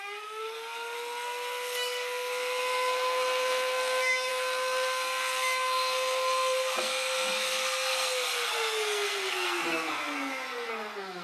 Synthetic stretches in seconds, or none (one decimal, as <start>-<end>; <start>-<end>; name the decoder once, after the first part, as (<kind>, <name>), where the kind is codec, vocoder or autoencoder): 0.0-11.2 (codec, SNAC)